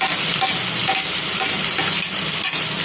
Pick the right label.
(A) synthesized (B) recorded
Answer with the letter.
B